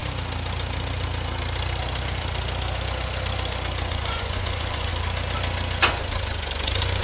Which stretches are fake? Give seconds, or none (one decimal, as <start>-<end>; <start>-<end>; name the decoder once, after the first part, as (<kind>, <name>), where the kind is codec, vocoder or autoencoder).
3.9-4.9 (vocoder, Vocos); 5.9-7.0